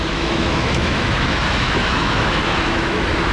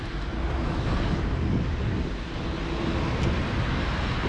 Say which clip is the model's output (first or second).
first